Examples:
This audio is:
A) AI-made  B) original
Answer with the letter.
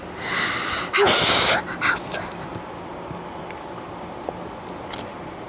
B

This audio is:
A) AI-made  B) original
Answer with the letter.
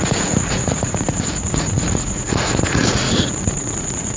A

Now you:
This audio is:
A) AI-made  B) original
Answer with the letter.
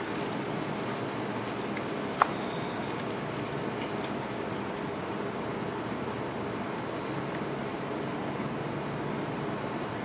B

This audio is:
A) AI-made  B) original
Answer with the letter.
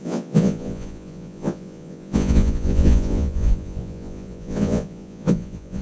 A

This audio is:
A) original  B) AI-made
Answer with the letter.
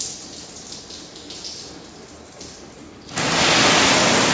A